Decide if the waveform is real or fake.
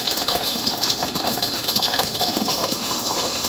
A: fake